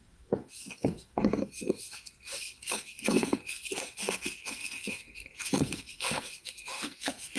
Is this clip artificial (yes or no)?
yes